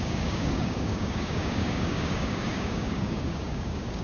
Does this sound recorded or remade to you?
remade